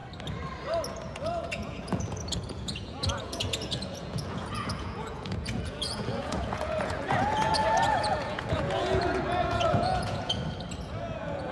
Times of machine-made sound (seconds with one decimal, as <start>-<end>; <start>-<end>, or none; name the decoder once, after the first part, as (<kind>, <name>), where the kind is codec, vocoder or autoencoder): 0.9-10.4 (vocoder, Vocos); 11.0-11.5